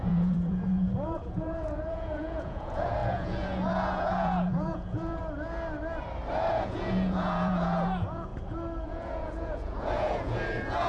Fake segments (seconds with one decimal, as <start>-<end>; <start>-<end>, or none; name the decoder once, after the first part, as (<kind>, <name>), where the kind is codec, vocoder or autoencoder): 0.0-5.2 (vocoder, Vocos); 6.5-8.3; 8.8-10.9